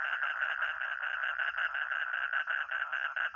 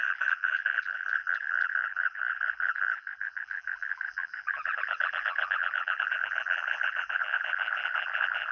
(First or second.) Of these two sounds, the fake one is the second